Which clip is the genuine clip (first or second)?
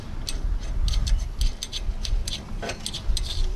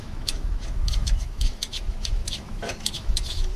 first